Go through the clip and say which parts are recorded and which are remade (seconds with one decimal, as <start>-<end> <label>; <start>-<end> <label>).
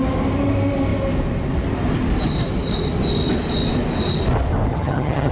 0.0-4.7 recorded; 4.7-5.3 remade